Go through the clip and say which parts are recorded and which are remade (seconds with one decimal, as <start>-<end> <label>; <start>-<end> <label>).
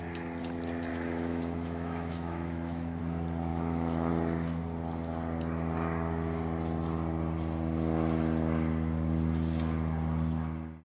0.0-0.9 recorded; 0.9-3.0 remade; 3.0-3.5 recorded; 3.5-4.1 remade; 4.1-10.8 recorded